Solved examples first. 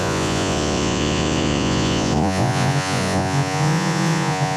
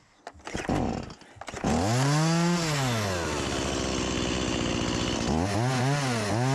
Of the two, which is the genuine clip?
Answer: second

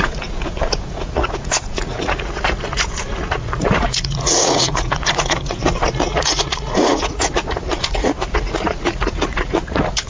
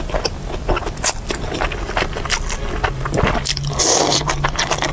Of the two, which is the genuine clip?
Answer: second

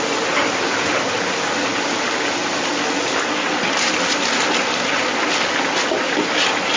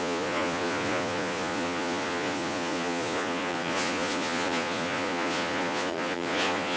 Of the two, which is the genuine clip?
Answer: first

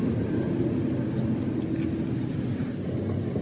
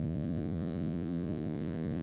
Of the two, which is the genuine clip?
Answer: first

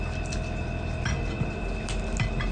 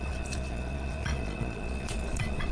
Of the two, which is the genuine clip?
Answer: first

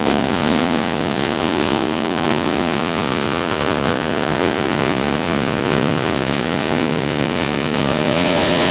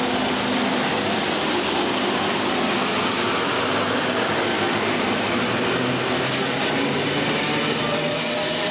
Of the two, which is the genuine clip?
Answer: second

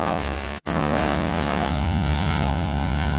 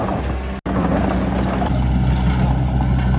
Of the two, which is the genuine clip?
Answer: second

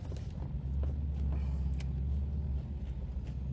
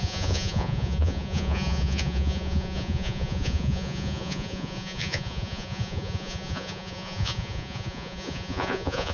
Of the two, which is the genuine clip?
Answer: first